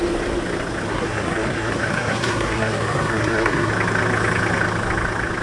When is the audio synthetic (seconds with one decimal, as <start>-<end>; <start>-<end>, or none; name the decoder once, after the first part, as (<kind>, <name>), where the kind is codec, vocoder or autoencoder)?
0.9-3.7 (codec, SNAC)